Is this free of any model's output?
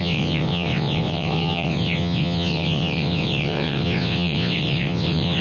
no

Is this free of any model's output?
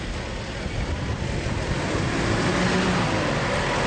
yes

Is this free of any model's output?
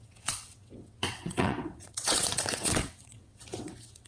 no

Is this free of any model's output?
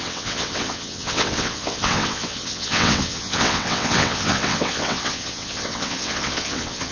no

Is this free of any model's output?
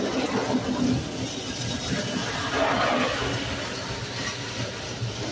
yes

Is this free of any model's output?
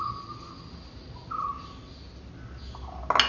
yes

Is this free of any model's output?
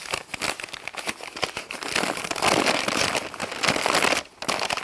yes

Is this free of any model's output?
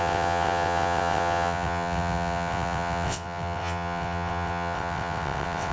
no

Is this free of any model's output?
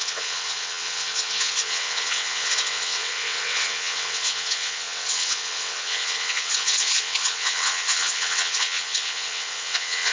no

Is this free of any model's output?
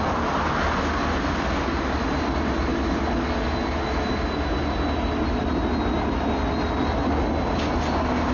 yes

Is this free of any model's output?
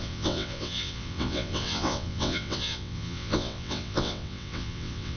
no